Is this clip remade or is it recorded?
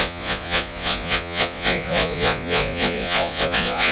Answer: remade